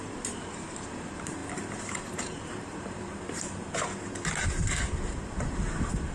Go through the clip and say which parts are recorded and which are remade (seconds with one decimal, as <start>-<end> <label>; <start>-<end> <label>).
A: 0.0-6.1 remade